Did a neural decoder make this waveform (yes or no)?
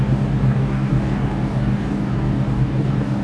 yes